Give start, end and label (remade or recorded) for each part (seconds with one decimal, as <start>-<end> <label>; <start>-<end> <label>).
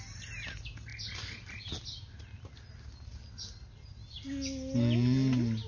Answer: 0.0-5.7 recorded